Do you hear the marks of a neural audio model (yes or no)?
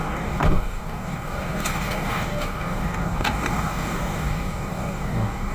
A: yes